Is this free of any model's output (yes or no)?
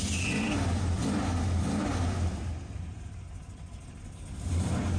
yes